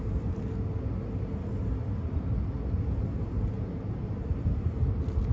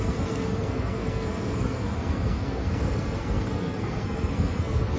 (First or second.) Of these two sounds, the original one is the first